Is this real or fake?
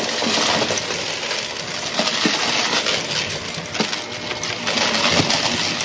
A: real